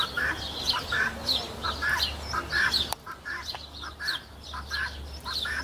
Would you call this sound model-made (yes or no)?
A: no